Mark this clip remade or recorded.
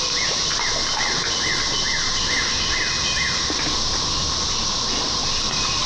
recorded